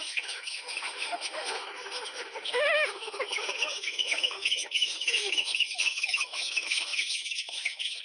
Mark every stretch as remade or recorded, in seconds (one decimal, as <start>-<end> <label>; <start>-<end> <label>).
0.0-8.0 remade